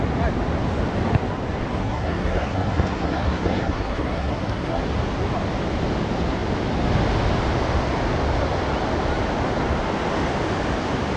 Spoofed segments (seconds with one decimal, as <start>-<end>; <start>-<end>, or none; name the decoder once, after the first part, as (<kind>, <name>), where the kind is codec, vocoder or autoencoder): 1.8-4.8 (codec, SNAC)